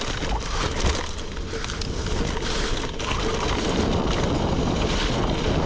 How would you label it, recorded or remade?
recorded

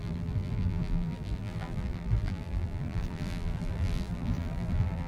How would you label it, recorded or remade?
remade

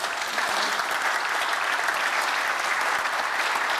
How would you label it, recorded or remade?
recorded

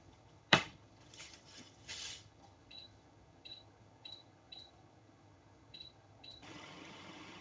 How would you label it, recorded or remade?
remade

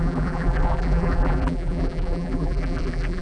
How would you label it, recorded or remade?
remade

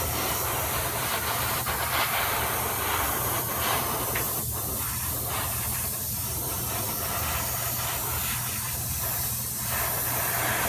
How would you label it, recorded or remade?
remade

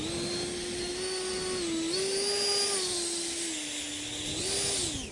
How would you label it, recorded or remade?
recorded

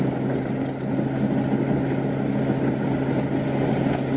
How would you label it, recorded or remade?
recorded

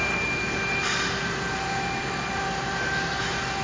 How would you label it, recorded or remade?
remade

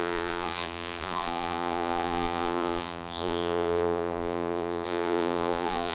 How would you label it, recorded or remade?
remade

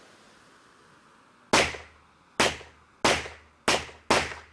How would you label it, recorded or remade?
recorded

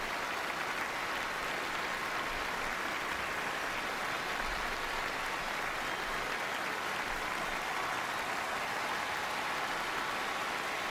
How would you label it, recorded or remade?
recorded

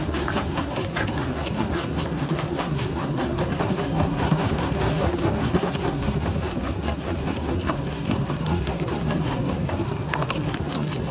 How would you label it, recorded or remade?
remade